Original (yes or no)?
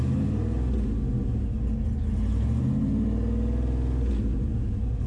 yes